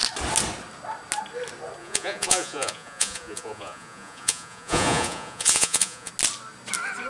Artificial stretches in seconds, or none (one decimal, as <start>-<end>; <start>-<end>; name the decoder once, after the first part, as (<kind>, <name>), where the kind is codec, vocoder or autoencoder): 1.8-6.1 (vocoder, Vocos)